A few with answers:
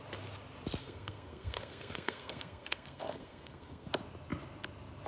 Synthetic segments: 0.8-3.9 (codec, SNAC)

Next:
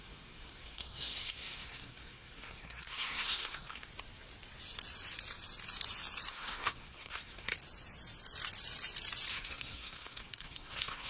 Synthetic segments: 0.0-3.9 (codec, SNAC); 6.3-7.5; 9.3-11.1